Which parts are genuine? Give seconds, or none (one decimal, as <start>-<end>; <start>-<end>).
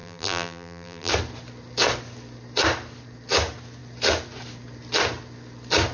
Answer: 1.1-5.9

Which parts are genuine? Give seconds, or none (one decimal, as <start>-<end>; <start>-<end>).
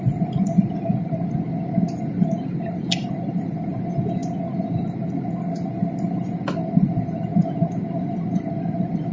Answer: 4.2-6.1; 7.3-8.0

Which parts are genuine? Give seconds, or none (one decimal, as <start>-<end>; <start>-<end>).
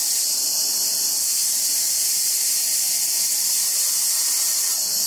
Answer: 0.0-1.4; 1.9-5.1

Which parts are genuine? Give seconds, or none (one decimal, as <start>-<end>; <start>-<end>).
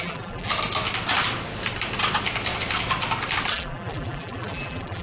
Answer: 0.5-3.5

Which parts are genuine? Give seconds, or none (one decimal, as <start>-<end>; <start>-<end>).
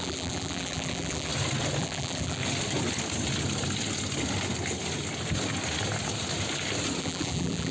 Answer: 1.3-1.8; 2.4-7.0